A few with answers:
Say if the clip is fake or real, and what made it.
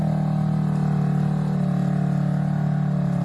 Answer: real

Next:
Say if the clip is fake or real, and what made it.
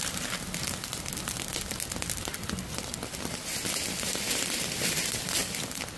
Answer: real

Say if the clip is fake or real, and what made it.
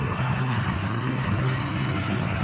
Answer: fake, codec, SNAC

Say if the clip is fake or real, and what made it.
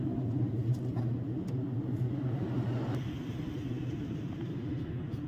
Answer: real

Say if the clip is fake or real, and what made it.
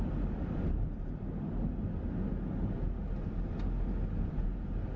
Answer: real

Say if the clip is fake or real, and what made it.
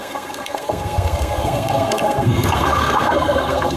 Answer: fake, codec, SNAC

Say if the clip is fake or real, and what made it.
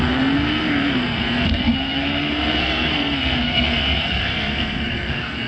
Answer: fake, codec, SNAC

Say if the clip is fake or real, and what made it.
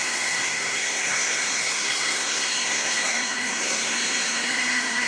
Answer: fake, codec, SNAC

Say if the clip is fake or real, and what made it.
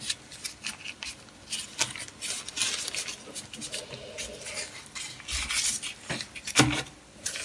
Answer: real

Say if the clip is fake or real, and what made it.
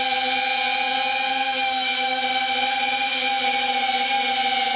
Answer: real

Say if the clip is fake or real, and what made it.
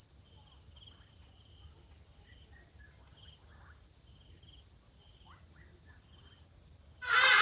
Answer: real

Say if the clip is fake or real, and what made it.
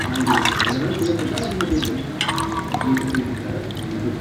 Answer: real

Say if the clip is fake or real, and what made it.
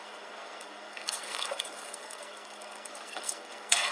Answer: fake, codec, SNAC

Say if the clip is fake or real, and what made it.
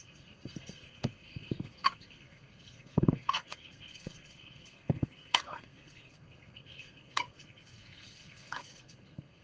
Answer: fake, codec, SNAC